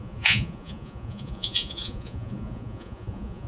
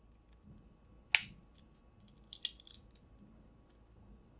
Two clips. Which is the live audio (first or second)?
second